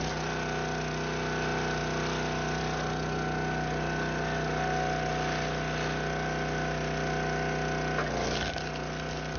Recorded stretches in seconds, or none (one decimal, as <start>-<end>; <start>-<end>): 0.0-9.4